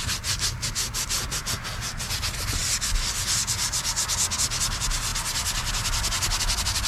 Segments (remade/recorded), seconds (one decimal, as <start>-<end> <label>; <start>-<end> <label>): 0.0-6.9 recorded